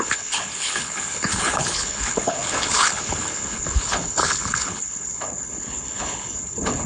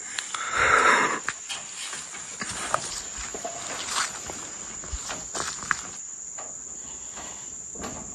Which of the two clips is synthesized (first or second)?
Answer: first